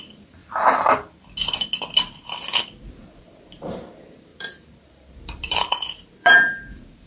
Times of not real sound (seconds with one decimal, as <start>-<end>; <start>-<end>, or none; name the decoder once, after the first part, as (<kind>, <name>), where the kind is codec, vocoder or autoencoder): 0.0-0.4 (vocoder, BigVGAN v2); 2.9-7.1